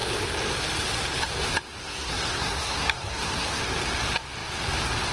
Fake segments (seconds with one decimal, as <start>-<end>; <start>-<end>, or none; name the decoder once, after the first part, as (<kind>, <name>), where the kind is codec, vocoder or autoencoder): 1.8-3.6 (codec, SNAC)